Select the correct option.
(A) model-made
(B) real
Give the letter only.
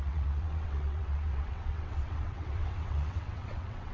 A